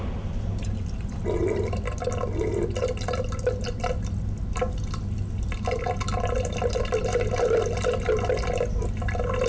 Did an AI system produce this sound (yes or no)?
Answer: no